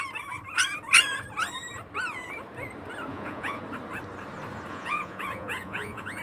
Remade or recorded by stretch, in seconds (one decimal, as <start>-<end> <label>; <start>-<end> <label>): 0.0-3.1 recorded; 3.1-3.6 remade; 3.6-4.7 recorded; 4.7-6.2 remade